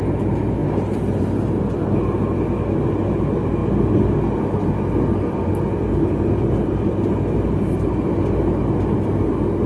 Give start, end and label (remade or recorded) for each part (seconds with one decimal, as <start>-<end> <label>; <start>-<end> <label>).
0.0-9.7 recorded